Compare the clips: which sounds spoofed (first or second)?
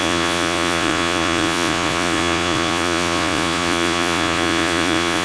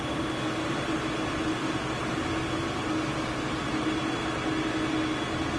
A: first